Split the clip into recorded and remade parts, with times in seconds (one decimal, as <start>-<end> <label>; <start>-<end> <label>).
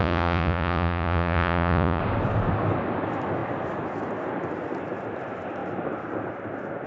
0.0-2.0 remade; 2.0-6.9 recorded